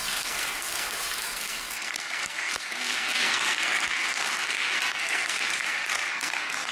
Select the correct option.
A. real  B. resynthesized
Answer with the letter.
B